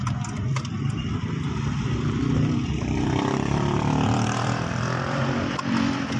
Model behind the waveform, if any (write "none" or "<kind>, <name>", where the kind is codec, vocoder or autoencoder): vocoder, BigVGAN v2